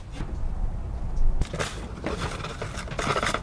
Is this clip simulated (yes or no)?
no